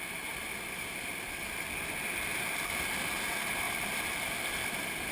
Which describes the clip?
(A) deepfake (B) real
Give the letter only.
B